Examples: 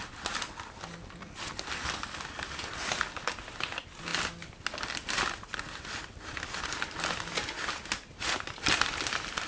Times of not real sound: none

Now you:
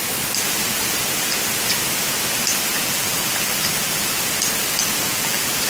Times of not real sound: 2.7-3.3 (vocoder, BigVGAN v2); 5.1-5.7

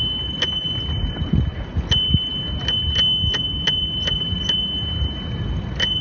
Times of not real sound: none

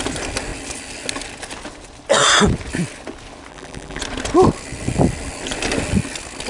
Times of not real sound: 3.5-4.0 (vocoder, BigVGAN v2)

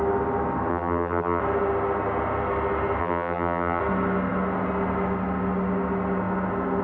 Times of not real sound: 0.7-1.4 (vocoder, BigVGAN v2); 3.0-3.8

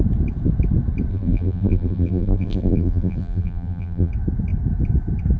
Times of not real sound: 1.1-4.1 (vocoder, BigVGAN v2)

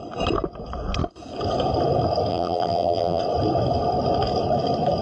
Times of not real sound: 2.3-3.2 (vocoder, BigVGAN v2)